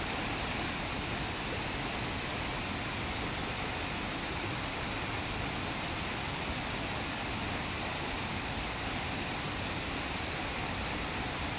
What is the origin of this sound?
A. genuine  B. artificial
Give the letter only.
A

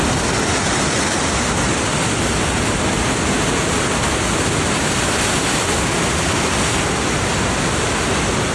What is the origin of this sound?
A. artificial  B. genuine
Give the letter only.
B